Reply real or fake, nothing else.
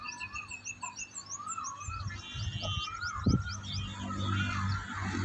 real